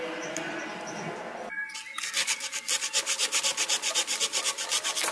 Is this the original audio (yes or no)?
yes